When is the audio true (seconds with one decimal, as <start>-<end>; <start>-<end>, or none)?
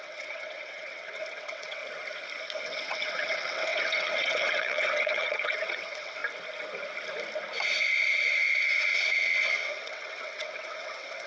1.8-2.6; 6.2-9.2